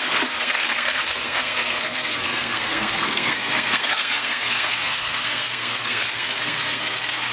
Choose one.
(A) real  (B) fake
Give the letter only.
B